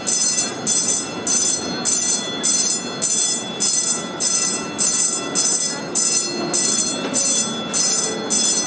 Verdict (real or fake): real